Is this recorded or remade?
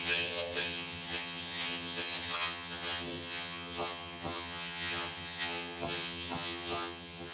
remade